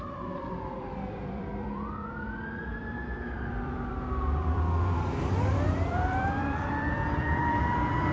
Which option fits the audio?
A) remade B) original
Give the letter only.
A